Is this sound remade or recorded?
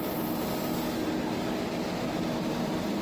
recorded